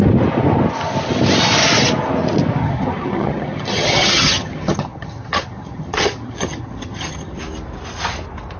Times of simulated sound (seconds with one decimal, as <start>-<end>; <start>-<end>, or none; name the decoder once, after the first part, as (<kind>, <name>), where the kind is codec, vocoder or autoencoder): 2.6-7.4 (vocoder, HiFi-GAN)